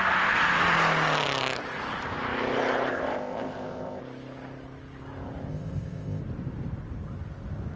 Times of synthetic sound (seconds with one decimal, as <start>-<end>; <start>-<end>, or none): 2.9-4.0; 5.5-6.2